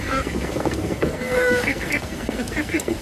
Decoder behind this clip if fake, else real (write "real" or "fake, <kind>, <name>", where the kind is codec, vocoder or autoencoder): fake, codec, SNAC